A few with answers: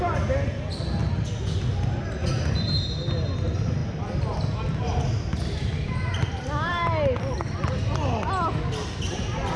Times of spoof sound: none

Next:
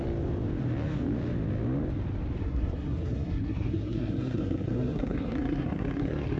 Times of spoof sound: 2.4-6.4

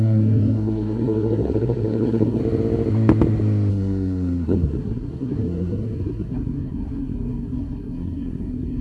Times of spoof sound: 0.0-2.4; 3.7-8.8

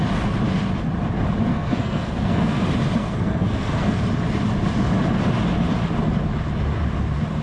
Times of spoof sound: 1.5-2.6; 3.0-4.0

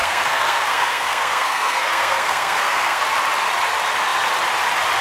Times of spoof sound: 0.0-3.0

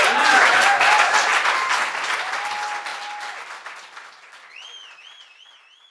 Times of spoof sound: none

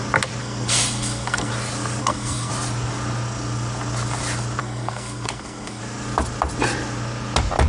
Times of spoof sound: 0.4-1.5; 2.0-2.5; 4.6-5.8

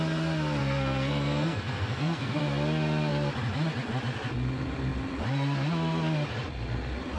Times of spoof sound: 0.6-2.4